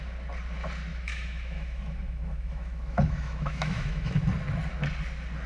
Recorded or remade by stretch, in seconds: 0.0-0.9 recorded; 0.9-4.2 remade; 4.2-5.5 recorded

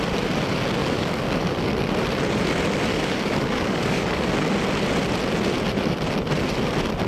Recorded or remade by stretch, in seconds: 0.0-0.8 recorded; 0.8-1.7 remade; 1.7-2.9 recorded; 2.9-4.3 remade; 4.3-7.1 recorded

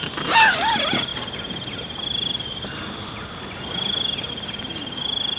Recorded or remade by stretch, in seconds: 0.0-5.4 recorded

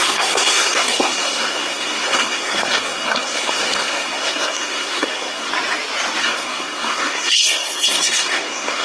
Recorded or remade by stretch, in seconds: 0.0-5.5 remade; 5.5-6.2 recorded; 6.2-8.8 remade

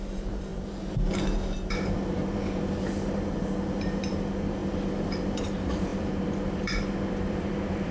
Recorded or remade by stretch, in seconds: 0.0-7.9 remade

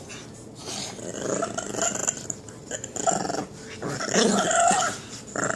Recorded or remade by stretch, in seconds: 0.0-5.6 recorded

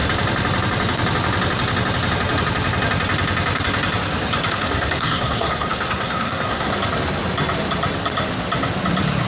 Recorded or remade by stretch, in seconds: 0.0-4.5 recorded; 4.5-6.7 remade; 6.7-9.3 recorded